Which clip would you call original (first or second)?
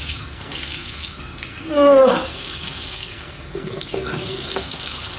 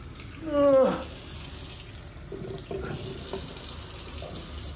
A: second